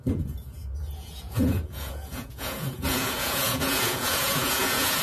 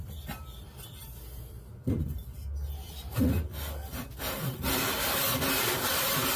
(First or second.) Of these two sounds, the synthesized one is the first